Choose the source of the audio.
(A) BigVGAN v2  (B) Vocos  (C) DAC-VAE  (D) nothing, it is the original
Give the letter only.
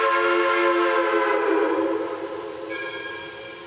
D